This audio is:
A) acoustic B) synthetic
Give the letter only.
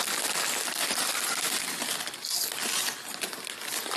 A